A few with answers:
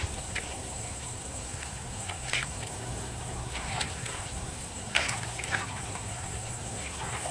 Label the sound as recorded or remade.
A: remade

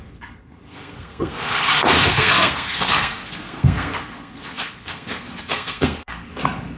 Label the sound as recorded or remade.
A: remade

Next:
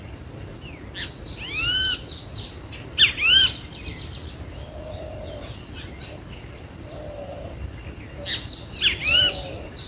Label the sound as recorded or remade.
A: recorded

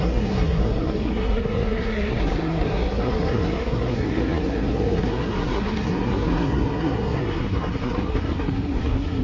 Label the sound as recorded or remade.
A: remade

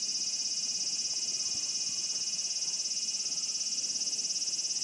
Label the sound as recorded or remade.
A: recorded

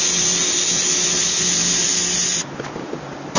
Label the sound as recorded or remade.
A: recorded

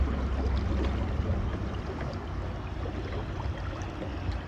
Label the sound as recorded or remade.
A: recorded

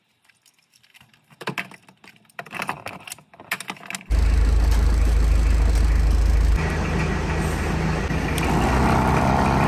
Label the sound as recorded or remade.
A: recorded